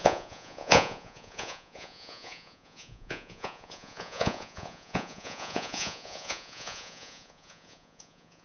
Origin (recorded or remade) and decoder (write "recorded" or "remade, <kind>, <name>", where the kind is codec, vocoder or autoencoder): remade, vocoder, Vocos